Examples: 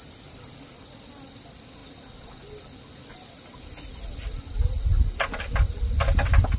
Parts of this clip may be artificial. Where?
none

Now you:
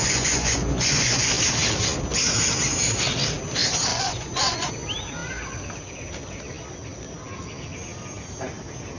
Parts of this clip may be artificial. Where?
0.0-1.3 (vocoder, Vocos); 3.9-4.7

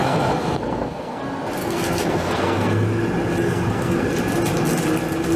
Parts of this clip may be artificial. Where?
0.0-1.2 (codec, SNAC); 1.6-3.0; 3.4-4.1

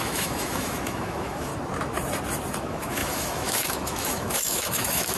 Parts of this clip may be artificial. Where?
0.0-1.5 (autoencoder, DAC-VAE); 2.6-5.2